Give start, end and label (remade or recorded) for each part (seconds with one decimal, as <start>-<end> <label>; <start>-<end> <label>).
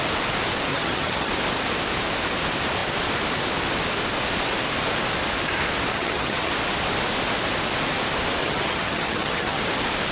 0.0-0.7 recorded; 0.7-1.3 remade; 1.3-5.9 recorded; 5.9-6.5 remade; 6.5-8.4 recorded; 8.4-9.6 remade; 9.6-10.1 recorded